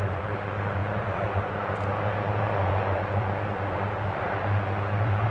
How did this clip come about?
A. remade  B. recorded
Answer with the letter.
A